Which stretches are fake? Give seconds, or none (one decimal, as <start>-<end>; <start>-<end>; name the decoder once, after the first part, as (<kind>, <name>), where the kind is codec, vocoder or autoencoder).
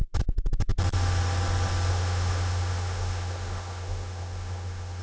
1.9-5.0 (autoencoder, DAC-VAE)